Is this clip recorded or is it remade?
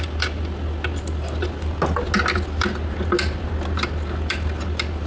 recorded